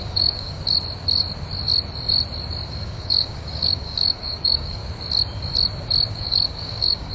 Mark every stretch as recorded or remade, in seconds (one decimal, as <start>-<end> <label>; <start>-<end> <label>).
0.0-0.6 remade; 0.6-2.7 recorded; 2.7-4.8 remade; 4.8-6.1 recorded; 6.1-7.1 remade